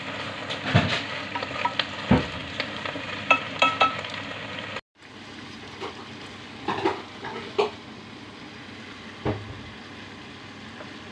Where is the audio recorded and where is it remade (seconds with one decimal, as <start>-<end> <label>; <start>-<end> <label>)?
0.0-2.4 recorded; 2.4-4.0 remade; 4.0-11.1 recorded